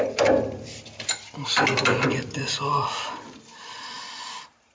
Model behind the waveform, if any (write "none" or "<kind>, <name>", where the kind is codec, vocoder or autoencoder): vocoder, BigVGAN v2